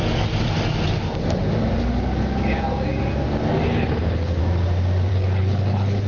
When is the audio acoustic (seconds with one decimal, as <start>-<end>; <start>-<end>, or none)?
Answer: 0.0-3.7; 4.4-5.1